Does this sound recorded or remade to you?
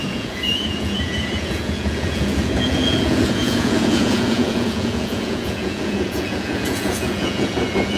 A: remade